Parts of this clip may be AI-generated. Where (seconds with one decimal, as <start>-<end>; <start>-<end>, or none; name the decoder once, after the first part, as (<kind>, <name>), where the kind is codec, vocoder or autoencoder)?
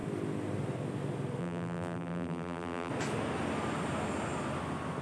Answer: 1.4-2.9 (vocoder, BigVGAN v2)